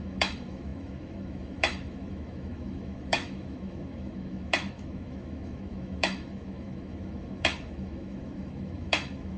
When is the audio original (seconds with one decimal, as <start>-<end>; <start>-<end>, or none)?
none